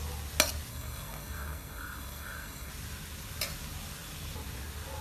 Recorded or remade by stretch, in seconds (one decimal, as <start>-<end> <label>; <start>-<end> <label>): 0.0-0.7 recorded; 0.7-2.7 remade; 2.7-5.0 recorded